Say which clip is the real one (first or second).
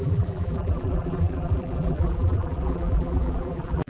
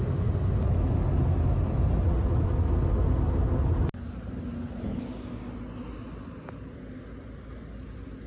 second